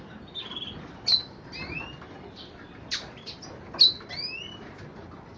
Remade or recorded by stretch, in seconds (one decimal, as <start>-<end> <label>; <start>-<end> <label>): 0.0-5.4 recorded